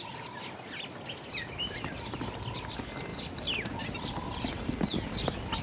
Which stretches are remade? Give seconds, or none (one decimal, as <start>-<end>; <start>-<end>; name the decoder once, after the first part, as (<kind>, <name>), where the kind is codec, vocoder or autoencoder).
3.1-5.6 (vocoder, BigVGAN v2)